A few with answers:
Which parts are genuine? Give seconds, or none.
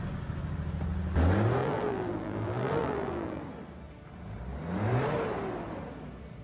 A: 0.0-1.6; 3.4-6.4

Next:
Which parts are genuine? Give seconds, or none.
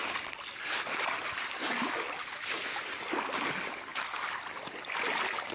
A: 0.0-5.5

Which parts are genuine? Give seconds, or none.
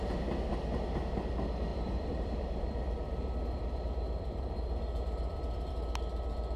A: 0.0-1.7; 5.7-6.6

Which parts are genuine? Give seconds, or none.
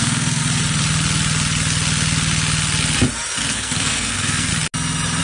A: 0.4-3.5; 4.5-5.2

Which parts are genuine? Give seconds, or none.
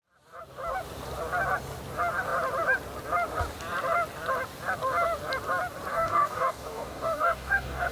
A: 0.0-5.9